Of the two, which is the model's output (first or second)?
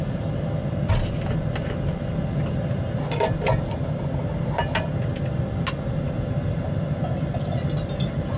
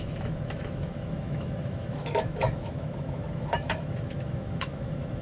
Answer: second